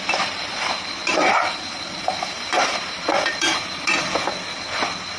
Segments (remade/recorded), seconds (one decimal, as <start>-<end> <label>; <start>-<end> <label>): 0.0-1.0 recorded; 1.0-4.1 remade; 4.1-5.2 recorded